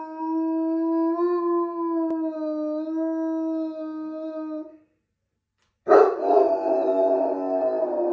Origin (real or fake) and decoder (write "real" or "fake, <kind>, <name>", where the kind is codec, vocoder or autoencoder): real